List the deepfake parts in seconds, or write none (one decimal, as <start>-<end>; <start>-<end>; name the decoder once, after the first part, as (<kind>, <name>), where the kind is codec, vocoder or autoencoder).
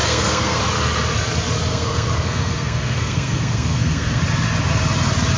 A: 0.0-0.6 (codec, SNAC); 1.7-4.2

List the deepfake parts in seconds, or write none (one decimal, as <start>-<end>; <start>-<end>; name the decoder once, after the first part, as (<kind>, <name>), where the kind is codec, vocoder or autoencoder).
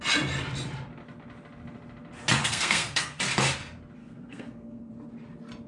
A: 2.4-3.2 (codec, SNAC); 4.0-4.9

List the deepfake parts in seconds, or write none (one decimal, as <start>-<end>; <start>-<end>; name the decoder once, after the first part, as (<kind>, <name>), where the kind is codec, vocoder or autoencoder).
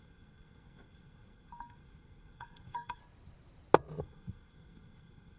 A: 0.0-3.0 (codec, SNAC); 4.0-5.4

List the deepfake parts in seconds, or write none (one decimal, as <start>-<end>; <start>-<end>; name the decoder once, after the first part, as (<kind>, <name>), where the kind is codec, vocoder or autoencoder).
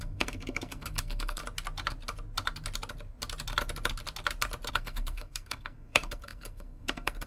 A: 0.0-1.4 (codec, SNAC); 4.7-7.3